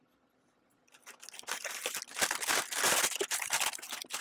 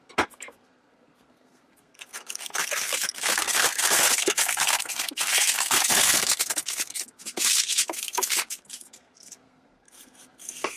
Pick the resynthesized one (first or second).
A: second